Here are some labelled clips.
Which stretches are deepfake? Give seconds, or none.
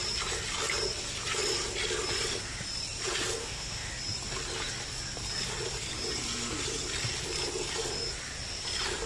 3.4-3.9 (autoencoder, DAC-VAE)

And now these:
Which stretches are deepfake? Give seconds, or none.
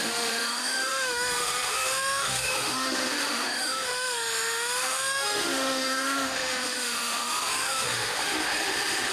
0.0-9.1 (autoencoder, DAC-VAE)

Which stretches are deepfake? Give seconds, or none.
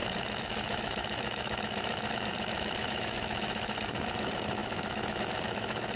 0.0-6.0 (autoencoder, DAC-VAE)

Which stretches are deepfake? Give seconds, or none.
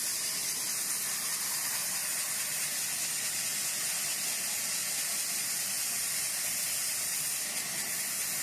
none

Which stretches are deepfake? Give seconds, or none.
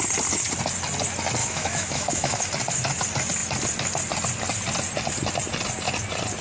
1.4-2.4 (autoencoder, DAC-VAE)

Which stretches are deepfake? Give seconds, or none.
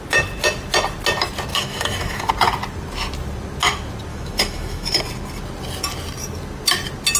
1.5-2.3 (autoencoder, DAC-VAE); 4.1-5.0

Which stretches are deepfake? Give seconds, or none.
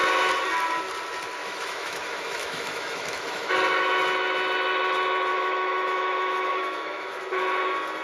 1.4-3.5 (autoencoder, DAC-VAE); 5.3-7.2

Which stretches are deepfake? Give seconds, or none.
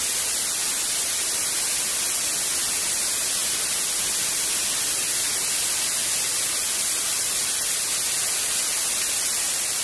none